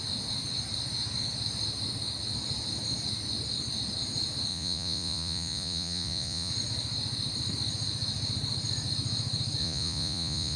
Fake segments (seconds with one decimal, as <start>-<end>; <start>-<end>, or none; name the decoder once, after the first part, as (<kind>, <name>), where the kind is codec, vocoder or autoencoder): 4.5-6.5 (vocoder, Vocos); 9.6-10.6

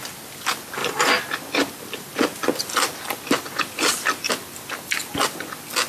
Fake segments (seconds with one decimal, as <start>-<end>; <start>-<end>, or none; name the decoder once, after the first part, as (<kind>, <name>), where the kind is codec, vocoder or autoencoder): none

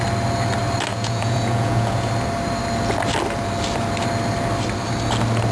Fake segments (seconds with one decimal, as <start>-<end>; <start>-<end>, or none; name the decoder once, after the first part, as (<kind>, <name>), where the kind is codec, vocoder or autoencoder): 0.9-2.1 (vocoder, Vocos)

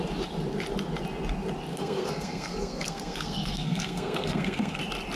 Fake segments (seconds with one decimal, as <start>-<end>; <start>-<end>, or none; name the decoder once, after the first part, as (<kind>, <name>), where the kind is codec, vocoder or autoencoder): 1.7-4.8 (codec, SNAC)

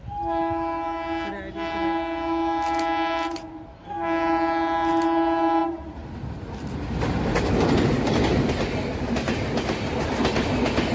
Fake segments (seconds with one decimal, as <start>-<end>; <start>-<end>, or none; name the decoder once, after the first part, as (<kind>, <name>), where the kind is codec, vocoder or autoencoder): none

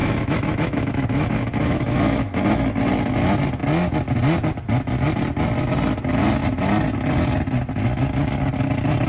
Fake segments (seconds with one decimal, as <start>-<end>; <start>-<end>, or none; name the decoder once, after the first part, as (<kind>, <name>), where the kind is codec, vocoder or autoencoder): 0.0-2.4 (autoencoder, DAC-VAE)